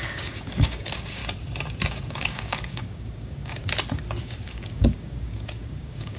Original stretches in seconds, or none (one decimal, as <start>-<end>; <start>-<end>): 1.2-1.9; 3.6-4.2